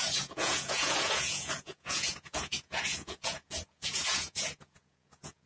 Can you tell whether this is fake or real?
fake